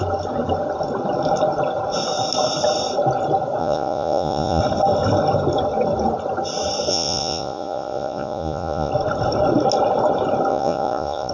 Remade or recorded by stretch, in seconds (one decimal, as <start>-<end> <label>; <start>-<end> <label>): 0.0-3.6 recorded; 3.6-4.6 remade; 4.6-6.9 recorded; 6.9-8.9 remade; 8.9-10.5 recorded; 10.5-11.3 remade